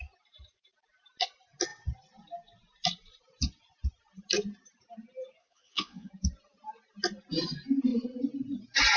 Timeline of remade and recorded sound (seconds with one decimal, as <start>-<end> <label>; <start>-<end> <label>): 0.0-5.4 recorded; 5.4-6.1 remade; 6.1-9.0 recorded